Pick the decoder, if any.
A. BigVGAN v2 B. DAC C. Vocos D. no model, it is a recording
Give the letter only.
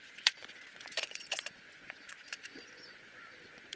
C